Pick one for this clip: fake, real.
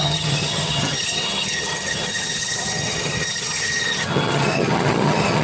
fake